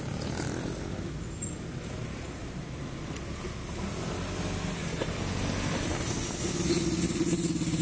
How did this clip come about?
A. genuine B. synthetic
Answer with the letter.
A